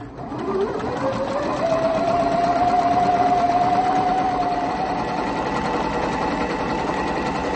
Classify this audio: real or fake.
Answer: real